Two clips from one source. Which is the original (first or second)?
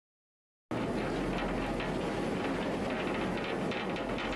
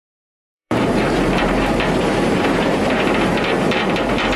first